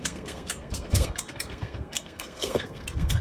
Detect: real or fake fake